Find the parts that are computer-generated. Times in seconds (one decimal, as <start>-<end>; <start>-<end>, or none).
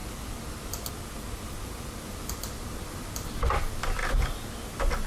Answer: none